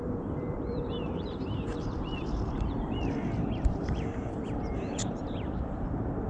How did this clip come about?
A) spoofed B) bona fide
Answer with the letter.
A